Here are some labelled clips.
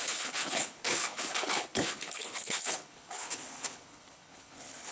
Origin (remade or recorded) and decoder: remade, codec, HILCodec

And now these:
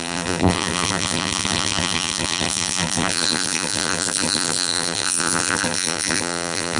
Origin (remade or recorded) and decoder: remade, vocoder, BigVGAN v2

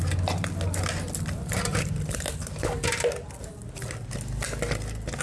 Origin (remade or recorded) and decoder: recorded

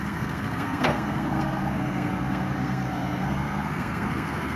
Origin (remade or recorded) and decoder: remade, codec, SNAC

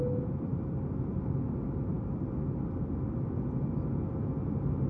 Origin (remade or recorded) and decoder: recorded